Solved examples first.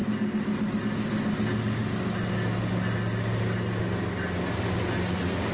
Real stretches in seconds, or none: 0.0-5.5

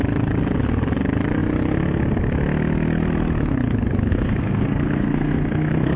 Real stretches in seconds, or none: 0.0-4.1

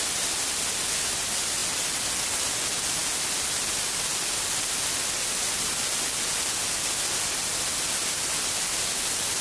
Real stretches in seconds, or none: 0.0-9.4

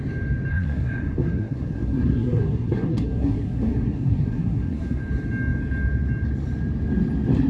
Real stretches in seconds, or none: 0.0-0.5; 5.0-7.5

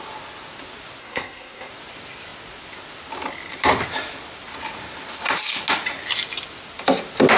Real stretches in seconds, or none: 0.0-1.0; 1.7-7.4

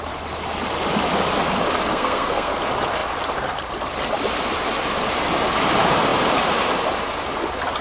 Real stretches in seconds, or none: 0.0-1.9; 2.5-7.8

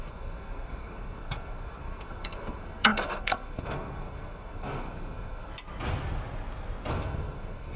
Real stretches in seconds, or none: 5.5-6.9